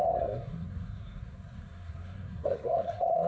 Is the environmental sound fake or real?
fake